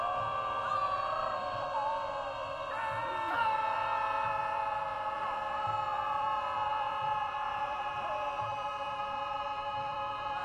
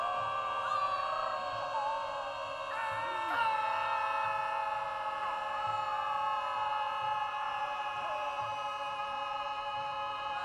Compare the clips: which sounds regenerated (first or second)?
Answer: first